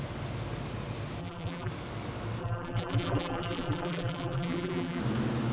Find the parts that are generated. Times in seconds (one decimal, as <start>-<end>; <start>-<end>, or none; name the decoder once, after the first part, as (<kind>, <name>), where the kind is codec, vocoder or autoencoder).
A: 1.2-1.7 (vocoder, BigVGAN v2); 2.4-5.0